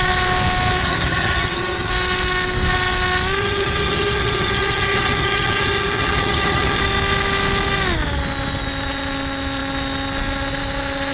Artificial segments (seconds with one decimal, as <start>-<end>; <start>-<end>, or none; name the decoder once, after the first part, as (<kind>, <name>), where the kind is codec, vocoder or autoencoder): 0.8-1.9 (vocoder, HiFi-GAN); 3.4-6.8